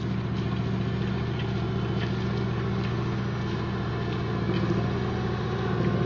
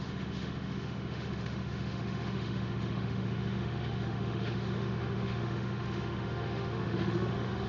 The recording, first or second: first